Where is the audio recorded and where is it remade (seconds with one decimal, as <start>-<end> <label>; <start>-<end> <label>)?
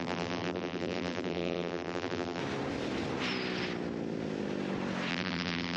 0.0-2.4 remade; 2.4-5.1 recorded; 5.1-5.8 remade